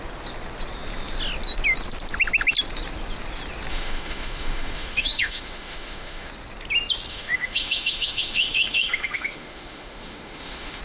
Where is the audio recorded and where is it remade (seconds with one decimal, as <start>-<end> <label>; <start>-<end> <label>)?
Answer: 0.0-3.7 recorded; 3.7-6.3 remade; 6.3-7.1 recorded; 7.1-10.8 remade